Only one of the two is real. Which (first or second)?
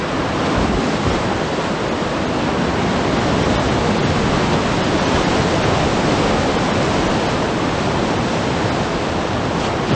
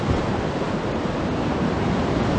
first